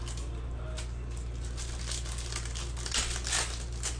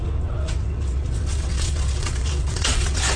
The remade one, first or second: second